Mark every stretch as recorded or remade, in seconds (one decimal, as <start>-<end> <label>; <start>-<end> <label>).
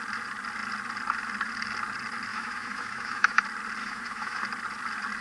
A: 0.0-2.3 recorded; 2.3-3.4 remade; 3.4-3.8 recorded; 3.8-4.4 remade; 4.4-5.2 recorded